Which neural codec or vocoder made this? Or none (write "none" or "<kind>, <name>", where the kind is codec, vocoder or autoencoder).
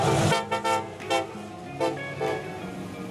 none